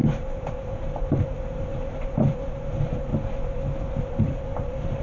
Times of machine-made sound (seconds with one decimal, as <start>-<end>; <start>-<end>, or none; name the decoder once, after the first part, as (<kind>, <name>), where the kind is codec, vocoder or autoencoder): 0.0-3.1 (vocoder, BigVGAN v2); 4.1-5.0